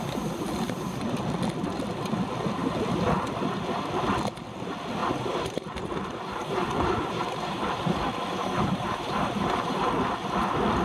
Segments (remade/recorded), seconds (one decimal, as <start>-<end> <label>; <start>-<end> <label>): 0.0-5.0 recorded; 5.0-8.0 remade; 8.0-8.4 recorded; 8.4-9.9 remade; 9.9-10.8 recorded